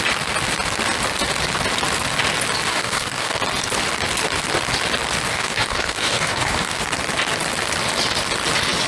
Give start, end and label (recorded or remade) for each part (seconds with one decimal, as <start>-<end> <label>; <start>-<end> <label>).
0.0-2.7 recorded; 2.7-3.4 remade; 3.4-5.3 recorded; 5.3-6.8 remade; 6.8-8.9 recorded